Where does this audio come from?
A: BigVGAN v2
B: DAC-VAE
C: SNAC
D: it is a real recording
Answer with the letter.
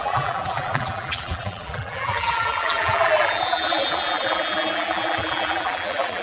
A